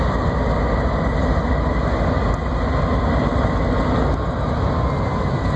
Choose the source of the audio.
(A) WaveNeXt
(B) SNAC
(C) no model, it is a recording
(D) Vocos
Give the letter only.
C